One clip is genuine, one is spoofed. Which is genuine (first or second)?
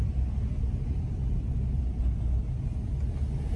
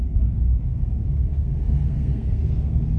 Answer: first